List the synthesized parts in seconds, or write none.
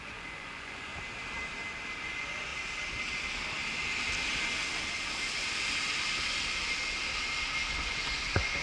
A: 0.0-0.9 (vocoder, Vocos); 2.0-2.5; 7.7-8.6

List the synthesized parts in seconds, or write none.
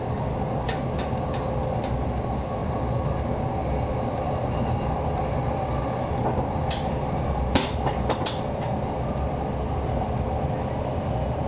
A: none